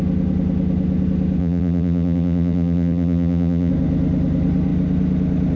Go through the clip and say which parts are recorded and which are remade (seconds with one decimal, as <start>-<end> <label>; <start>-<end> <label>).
0.0-1.4 recorded; 1.4-3.7 remade; 3.7-5.6 recorded